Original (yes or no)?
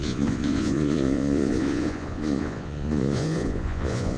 no